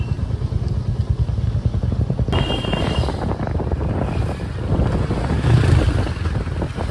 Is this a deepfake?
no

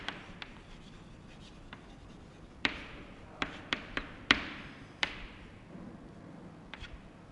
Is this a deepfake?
yes